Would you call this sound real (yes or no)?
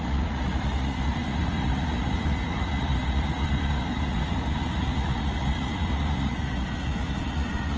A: no